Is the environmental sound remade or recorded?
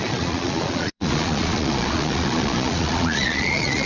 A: remade